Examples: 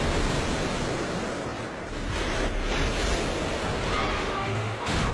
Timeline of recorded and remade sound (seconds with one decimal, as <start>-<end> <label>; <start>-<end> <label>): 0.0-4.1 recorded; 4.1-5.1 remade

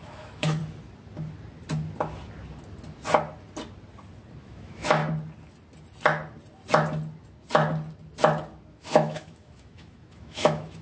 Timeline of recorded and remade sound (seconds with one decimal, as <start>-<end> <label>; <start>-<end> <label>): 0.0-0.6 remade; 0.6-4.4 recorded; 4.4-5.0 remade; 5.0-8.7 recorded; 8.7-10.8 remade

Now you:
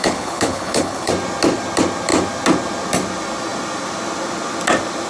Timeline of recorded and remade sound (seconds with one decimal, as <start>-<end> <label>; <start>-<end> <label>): 0.0-1.1 remade; 1.1-5.1 recorded

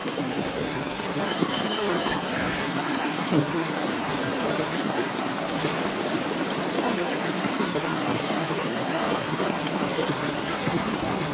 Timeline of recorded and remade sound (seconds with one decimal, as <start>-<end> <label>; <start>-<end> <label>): 0.0-5.8 remade; 5.8-6.7 recorded; 6.7-11.3 remade

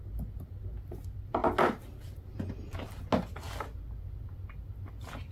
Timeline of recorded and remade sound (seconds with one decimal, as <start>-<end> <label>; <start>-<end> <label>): 0.0-5.3 recorded